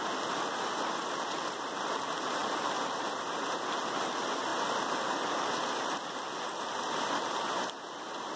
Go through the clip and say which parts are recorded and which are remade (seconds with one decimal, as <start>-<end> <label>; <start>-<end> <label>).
0.0-2.4 recorded; 2.4-3.4 remade; 3.4-8.4 recorded